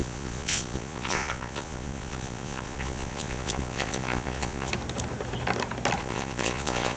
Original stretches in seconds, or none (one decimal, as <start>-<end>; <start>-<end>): 4.7-6.0